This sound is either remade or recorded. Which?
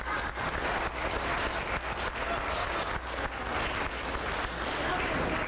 recorded